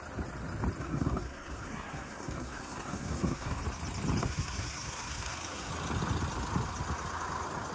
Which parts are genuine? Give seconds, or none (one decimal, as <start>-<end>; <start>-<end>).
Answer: 0.0-0.8; 3.6-4.2; 5.7-7.7